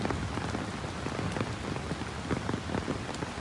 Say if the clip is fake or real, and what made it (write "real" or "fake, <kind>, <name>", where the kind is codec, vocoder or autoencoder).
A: real